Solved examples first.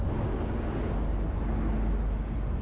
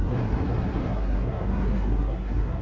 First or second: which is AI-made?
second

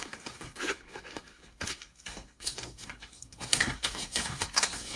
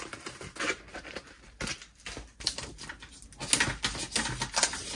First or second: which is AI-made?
first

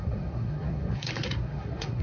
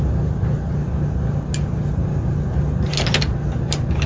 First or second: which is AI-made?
first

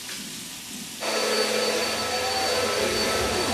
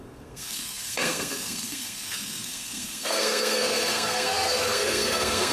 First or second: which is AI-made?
second